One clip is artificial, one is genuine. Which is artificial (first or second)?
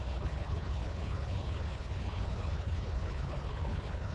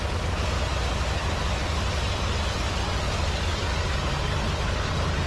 first